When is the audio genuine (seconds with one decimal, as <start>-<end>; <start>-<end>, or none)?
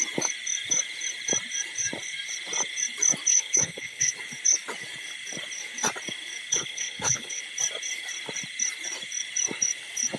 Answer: 0.0-3.3; 4.1-6.5; 7.4-10.2